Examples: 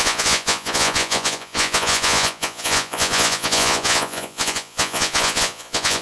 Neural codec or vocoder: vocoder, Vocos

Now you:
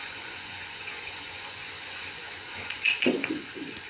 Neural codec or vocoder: vocoder, Vocos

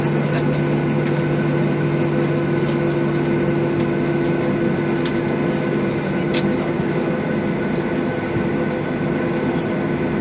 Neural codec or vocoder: none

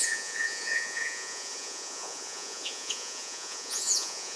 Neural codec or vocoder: vocoder, Vocos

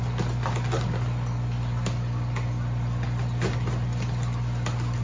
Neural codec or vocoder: none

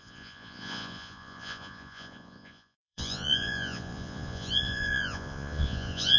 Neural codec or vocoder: vocoder, Vocos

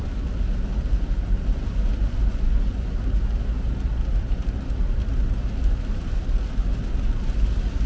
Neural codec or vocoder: none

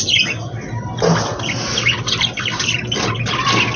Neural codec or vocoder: none